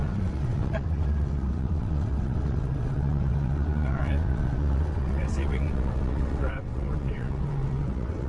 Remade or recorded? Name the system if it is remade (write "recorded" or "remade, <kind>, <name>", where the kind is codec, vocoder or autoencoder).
remade, vocoder, WaveNeXt